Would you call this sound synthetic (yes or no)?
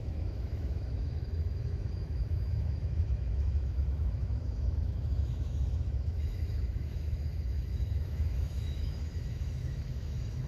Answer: yes